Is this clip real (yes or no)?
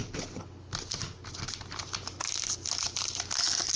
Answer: yes